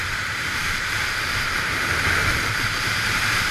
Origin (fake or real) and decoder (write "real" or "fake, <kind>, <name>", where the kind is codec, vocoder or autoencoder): fake, vocoder, BigVGAN v2